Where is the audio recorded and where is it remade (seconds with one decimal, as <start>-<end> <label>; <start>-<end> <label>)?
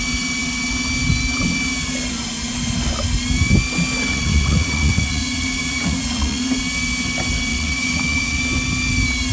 0.0-4.1 recorded; 4.1-6.6 remade; 6.6-7.5 recorded; 7.5-8.4 remade; 8.4-9.3 recorded